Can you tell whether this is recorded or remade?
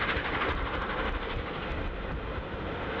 recorded